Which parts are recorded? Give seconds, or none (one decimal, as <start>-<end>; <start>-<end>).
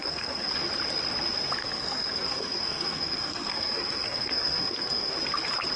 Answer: 0.5-1.6; 5.1-5.8